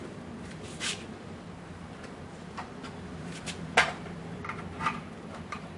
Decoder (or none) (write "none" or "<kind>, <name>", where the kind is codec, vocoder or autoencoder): none